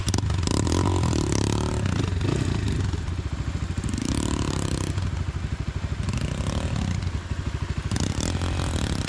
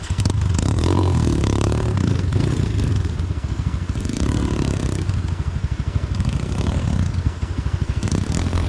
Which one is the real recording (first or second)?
first